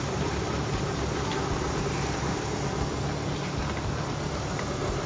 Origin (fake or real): real